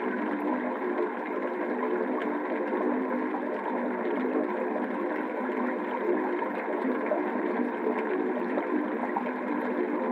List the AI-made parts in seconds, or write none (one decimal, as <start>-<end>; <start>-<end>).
0.0-10.1